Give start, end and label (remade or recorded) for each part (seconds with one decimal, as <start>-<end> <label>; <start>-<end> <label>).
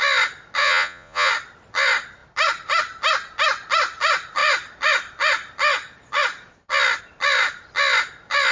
0.0-0.6 recorded; 0.6-1.3 remade; 1.3-8.5 recorded